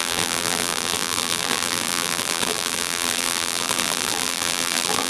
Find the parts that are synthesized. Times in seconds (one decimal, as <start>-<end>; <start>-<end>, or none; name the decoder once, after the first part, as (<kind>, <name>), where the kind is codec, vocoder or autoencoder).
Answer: 0.0-5.1 (vocoder, BigVGAN v2)